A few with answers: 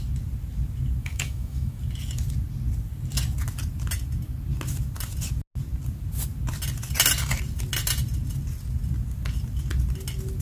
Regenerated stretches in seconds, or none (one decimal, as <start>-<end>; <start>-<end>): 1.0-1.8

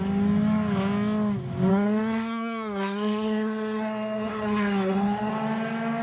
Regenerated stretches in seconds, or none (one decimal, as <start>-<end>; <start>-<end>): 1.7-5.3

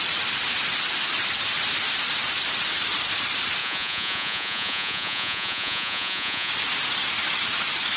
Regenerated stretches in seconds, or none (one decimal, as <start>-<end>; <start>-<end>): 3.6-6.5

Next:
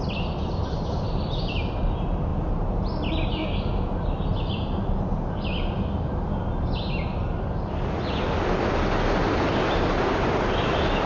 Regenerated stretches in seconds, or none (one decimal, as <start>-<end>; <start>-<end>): none

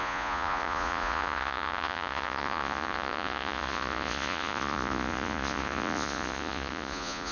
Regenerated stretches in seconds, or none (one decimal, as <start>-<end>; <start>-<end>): 0.0-7.3